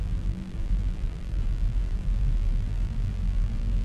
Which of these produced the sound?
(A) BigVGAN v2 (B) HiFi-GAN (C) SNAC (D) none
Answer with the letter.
A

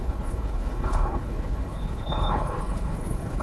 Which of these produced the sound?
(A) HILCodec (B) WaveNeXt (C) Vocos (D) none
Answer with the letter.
A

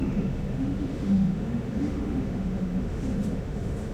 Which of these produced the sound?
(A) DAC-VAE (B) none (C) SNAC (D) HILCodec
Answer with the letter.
A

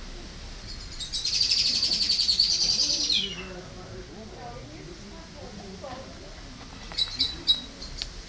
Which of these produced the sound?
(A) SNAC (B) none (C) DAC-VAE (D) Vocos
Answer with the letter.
B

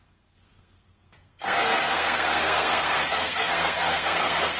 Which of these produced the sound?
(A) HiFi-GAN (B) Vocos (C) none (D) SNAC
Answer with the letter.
D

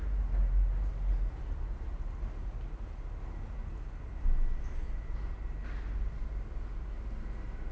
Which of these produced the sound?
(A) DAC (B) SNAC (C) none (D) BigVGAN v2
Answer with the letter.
C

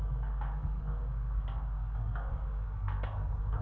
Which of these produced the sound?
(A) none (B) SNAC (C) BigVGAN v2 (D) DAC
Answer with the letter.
B